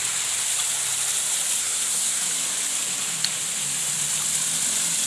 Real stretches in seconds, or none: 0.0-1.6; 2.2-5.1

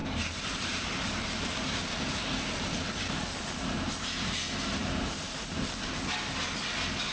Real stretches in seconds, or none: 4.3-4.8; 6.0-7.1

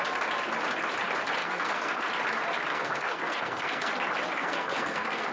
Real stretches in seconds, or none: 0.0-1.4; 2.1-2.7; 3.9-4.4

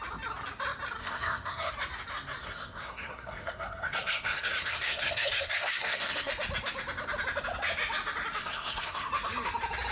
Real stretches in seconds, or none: 0.0-1.0; 1.7-2.4; 6.3-8.4; 9.1-9.9

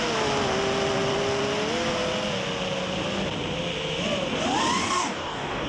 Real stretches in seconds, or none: 0.0-4.8

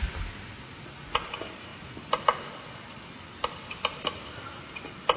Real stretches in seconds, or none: 0.0-5.2

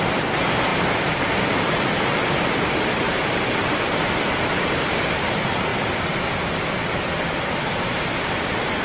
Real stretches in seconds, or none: 5.7-7.6